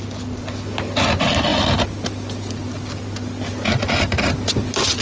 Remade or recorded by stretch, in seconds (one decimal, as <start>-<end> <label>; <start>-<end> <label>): 0.0-5.0 recorded